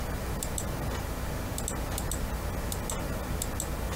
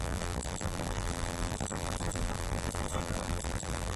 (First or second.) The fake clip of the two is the second